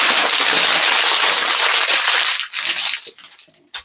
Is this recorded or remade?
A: recorded